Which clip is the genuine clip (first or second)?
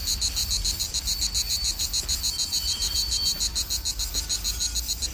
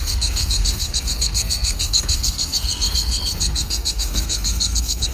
first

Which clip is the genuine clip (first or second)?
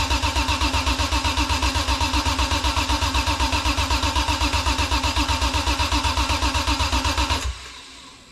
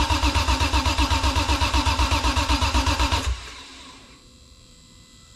first